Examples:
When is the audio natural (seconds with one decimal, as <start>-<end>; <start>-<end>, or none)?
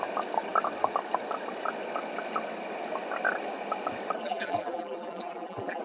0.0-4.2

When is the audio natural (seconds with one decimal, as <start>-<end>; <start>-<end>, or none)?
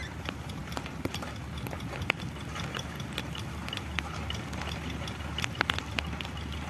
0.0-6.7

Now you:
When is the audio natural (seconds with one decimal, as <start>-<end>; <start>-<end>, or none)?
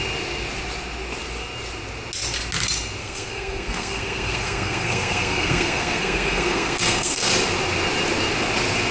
0.0-3.0; 7.3-8.9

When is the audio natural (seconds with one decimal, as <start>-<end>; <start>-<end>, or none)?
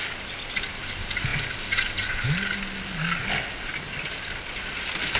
0.0-5.2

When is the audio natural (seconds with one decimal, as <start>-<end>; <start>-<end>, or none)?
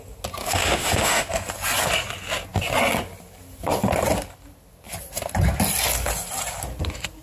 0.0-0.4; 1.3-7.2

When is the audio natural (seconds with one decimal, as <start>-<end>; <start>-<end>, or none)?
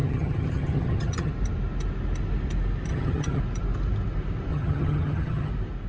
1.3-2.9; 3.4-4.5; 5.5-5.9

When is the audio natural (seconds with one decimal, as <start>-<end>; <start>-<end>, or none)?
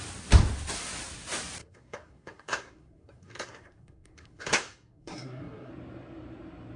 0.0-1.6; 5.7-6.8